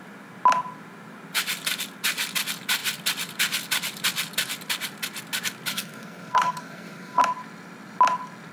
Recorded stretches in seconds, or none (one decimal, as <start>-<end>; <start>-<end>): 0.0-5.7; 7.2-8.5